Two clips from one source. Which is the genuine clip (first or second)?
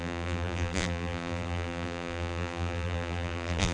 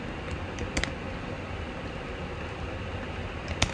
second